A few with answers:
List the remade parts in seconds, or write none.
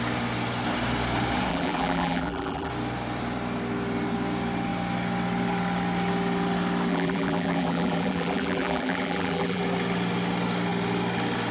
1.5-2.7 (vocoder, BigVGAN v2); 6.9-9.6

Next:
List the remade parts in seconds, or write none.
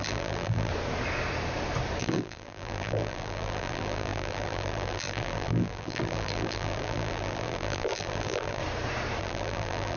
0.0-0.7 (vocoder, BigVGAN v2); 2.0-8.6; 9.2-10.0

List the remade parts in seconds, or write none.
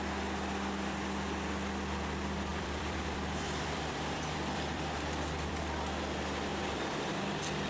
2.5-5.6 (vocoder, BigVGAN v2); 6.5-7.7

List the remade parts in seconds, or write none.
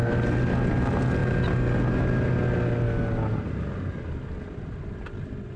none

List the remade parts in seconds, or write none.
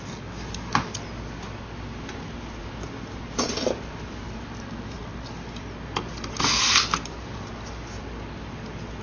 2.6-5.0 (vocoder, BigVGAN v2)